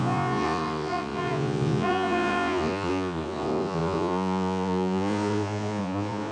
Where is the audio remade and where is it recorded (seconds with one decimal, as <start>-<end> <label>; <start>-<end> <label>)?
0.0-6.3 remade